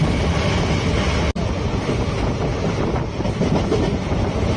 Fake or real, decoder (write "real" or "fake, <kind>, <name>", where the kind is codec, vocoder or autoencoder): real